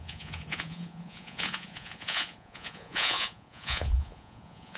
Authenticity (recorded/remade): remade